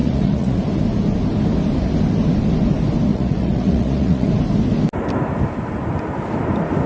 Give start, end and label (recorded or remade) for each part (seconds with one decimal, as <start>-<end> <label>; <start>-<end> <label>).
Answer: 0.0-0.6 remade; 0.6-3.1 recorded; 3.1-4.3 remade; 4.3-6.9 recorded